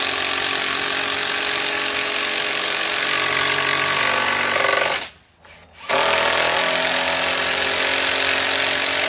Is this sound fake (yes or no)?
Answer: no